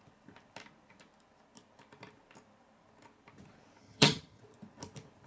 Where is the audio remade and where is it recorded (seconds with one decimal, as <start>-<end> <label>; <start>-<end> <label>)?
0.0-3.8 recorded; 3.8-4.4 remade; 4.4-5.3 recorded

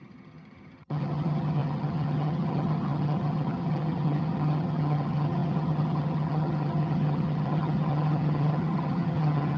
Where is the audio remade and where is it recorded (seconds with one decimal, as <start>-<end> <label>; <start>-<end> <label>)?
0.0-9.6 remade

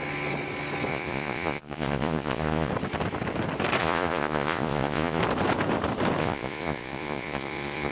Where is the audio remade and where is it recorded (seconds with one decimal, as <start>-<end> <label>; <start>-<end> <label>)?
0.0-0.9 recorded; 0.9-2.7 remade; 2.7-3.8 recorded; 3.8-5.2 remade; 5.2-6.2 recorded; 6.2-7.9 remade

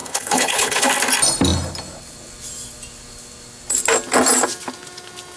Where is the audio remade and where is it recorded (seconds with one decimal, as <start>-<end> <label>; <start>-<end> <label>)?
0.0-0.9 remade; 0.9-5.4 recorded

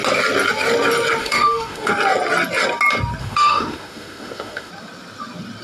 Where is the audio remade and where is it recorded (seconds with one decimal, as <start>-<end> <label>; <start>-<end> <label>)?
0.0-1.2 recorded; 1.2-1.9 remade; 1.9-3.2 recorded; 3.2-4.7 remade; 4.7-5.6 recorded

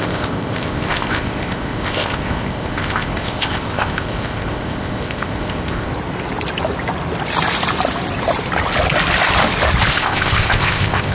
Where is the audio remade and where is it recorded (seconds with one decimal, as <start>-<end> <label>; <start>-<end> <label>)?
0.0-5.9 remade; 5.9-9.9 recorded; 9.9-11.1 remade